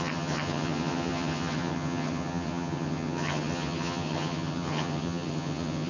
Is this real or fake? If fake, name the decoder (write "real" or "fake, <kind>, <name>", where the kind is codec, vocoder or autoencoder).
fake, vocoder, HiFi-GAN